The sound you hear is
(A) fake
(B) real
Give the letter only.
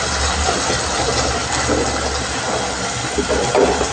B